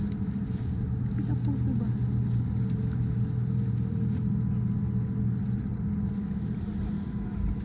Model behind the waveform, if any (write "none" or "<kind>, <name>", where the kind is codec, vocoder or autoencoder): none